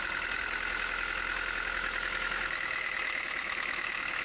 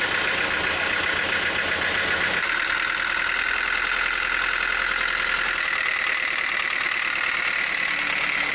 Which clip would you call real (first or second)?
second